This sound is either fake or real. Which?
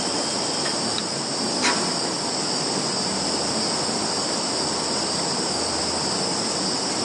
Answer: real